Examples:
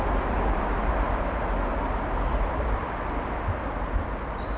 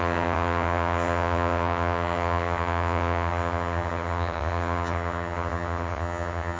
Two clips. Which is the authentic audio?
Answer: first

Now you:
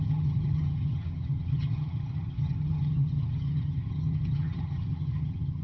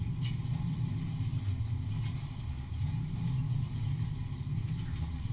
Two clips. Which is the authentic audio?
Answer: second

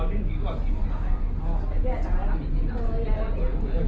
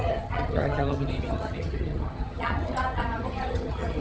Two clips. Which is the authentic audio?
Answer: first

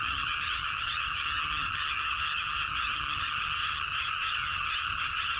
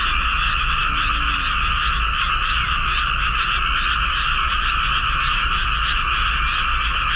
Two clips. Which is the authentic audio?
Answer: second